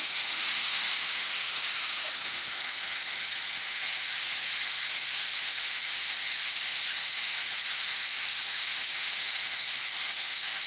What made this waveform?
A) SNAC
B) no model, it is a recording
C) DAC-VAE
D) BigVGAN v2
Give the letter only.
C